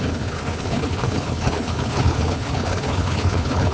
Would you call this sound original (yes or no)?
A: no